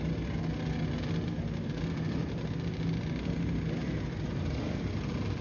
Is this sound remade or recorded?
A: recorded